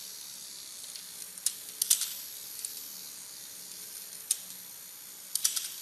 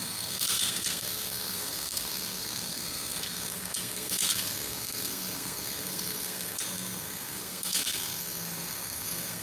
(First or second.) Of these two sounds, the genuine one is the first